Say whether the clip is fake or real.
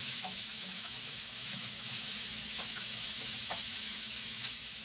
fake